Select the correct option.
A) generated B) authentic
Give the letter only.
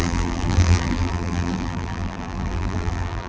A